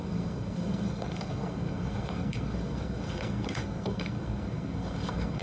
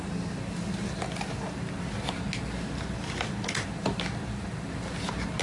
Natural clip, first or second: second